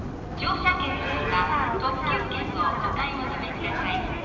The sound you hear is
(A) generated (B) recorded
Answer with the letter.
B